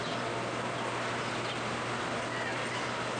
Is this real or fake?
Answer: real